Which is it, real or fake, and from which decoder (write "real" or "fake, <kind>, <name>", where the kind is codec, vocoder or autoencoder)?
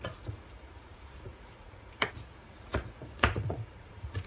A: fake, vocoder, Vocos